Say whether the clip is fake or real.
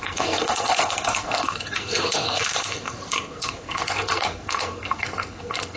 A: fake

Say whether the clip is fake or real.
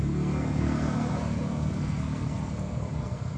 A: fake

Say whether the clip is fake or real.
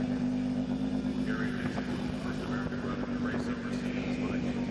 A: real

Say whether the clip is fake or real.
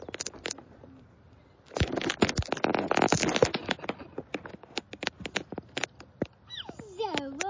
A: real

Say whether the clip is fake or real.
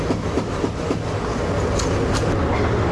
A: real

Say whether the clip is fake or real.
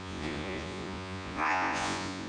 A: fake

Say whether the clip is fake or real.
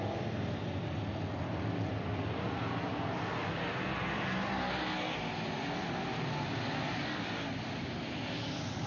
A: real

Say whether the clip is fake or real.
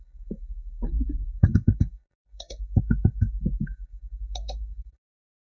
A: fake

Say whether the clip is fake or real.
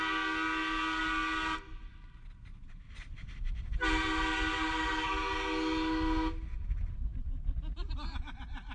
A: real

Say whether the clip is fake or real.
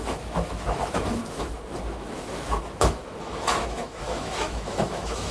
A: fake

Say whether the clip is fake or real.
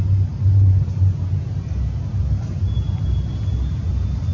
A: real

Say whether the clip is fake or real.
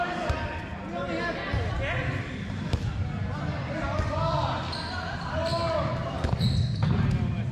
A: real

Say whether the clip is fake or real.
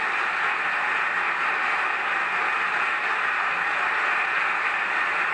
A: real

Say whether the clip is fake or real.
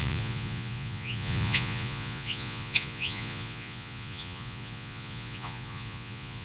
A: fake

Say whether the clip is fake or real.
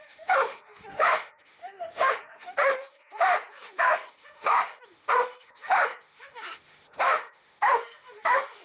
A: fake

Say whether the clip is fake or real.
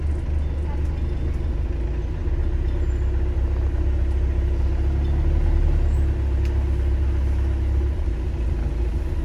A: real